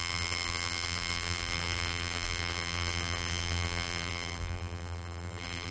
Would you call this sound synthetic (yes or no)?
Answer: yes